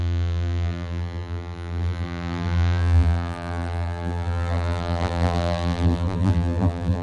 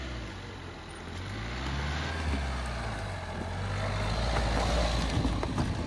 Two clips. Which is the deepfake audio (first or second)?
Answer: first